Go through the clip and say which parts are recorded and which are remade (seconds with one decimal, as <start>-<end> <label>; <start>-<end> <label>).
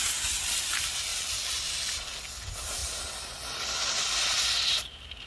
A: 0.0-5.3 recorded